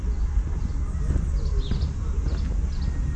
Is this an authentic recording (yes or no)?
yes